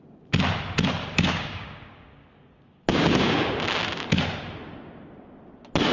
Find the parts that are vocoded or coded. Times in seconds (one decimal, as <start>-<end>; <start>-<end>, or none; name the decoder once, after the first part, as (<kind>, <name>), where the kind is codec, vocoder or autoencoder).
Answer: 1.0-3.5 (codec, DAC)